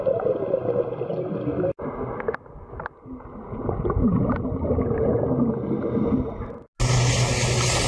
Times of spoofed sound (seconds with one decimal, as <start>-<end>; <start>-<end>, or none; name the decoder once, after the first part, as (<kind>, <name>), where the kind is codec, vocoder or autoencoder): none